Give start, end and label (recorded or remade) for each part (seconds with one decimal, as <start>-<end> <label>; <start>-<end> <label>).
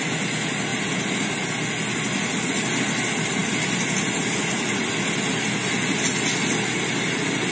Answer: 0.0-7.5 recorded